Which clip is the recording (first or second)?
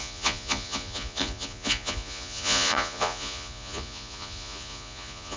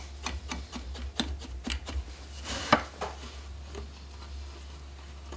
second